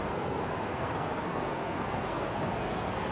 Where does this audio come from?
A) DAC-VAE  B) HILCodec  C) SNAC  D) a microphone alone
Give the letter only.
C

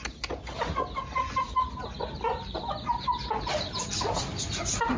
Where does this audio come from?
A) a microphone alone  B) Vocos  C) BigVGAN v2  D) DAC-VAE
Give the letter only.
A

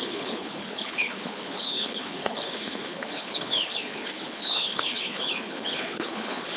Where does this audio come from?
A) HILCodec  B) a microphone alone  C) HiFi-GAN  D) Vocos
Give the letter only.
A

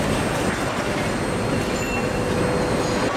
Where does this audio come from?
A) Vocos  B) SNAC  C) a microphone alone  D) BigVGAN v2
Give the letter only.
C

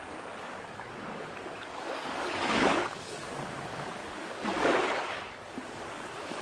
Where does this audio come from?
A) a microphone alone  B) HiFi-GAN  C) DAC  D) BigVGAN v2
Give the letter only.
C